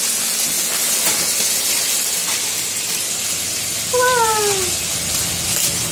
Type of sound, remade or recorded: recorded